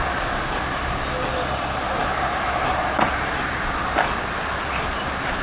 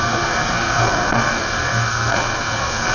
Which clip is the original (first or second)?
first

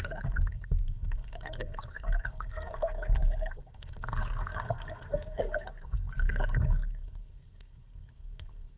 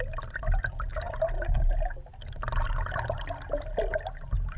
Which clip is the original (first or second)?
second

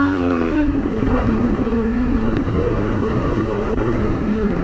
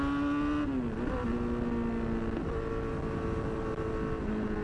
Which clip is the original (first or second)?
second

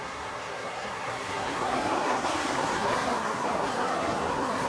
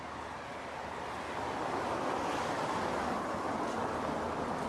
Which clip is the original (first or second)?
second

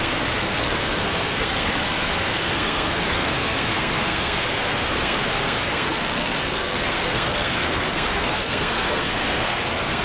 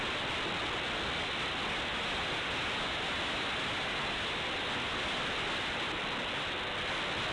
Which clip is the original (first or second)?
second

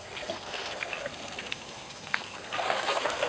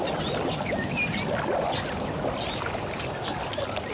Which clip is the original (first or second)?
second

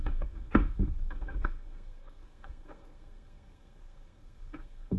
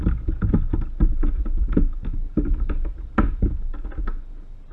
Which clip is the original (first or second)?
second